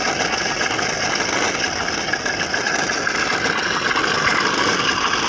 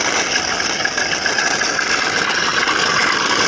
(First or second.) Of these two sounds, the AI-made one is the second